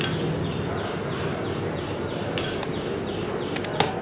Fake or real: real